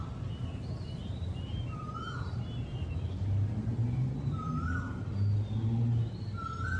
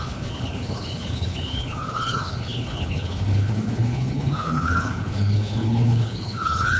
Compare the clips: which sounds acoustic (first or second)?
first